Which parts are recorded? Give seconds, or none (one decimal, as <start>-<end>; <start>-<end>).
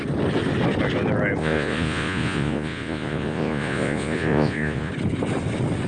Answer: 0.0-1.4; 4.9-5.9